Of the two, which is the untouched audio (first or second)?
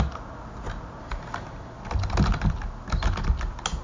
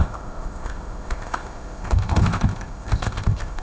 first